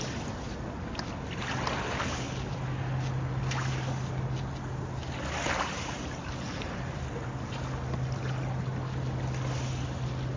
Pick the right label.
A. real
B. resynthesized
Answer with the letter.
A